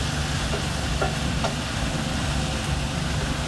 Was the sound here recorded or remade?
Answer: recorded